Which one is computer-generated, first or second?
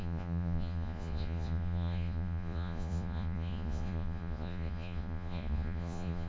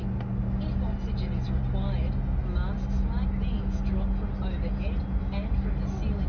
first